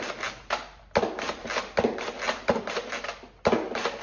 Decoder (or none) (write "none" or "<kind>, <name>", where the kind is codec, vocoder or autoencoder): none